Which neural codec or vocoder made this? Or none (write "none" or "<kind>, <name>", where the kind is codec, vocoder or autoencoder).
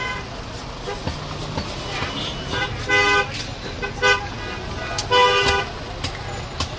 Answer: none